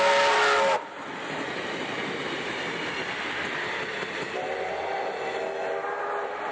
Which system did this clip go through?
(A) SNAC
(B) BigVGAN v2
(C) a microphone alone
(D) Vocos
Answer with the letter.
C